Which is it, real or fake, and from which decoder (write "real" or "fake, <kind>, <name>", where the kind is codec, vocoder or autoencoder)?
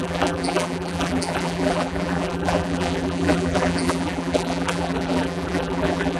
fake, vocoder, BigVGAN v2